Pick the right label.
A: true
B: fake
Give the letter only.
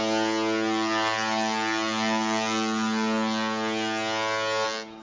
A